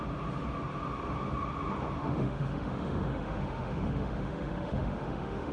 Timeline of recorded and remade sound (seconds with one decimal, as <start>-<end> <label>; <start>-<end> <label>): 0.0-2.0 recorded; 2.0-5.5 remade